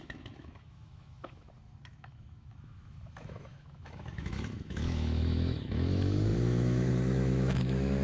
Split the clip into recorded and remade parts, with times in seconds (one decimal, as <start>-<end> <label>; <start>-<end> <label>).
0.0-8.0 remade